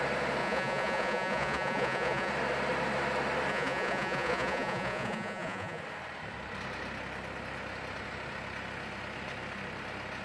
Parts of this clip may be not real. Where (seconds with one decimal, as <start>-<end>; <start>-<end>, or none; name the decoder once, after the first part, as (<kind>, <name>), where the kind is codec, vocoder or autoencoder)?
0.4-2.3 (vocoder, Vocos); 3.5-5.8